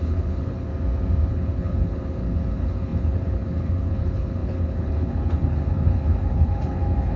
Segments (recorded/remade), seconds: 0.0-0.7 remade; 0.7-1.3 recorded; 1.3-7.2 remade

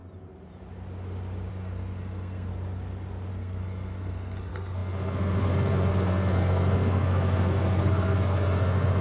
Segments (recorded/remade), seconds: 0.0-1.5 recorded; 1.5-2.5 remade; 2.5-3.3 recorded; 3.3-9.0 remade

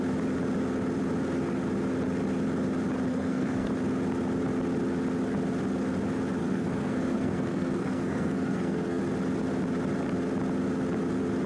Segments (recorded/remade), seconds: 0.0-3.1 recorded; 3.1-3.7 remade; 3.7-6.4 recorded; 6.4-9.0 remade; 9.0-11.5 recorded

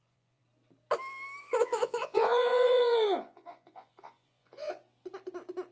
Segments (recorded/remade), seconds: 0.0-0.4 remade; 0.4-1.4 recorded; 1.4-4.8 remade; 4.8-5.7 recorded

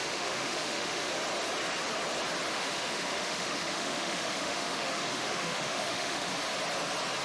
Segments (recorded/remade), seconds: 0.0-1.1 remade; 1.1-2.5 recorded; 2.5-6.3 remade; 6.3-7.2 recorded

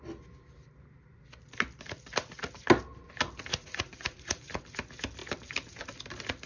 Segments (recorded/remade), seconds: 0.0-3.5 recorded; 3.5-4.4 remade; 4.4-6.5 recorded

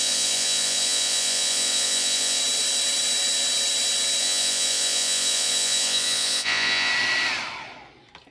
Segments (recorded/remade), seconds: 0.0-2.4 remade; 2.4-4.2 recorded; 4.2-6.9 remade; 6.9-8.3 recorded

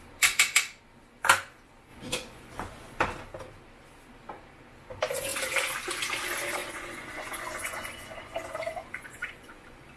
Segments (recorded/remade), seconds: 0.0-1.9 recorded; 1.9-3.0 remade; 3.0-6.6 recorded; 6.6-10.0 remade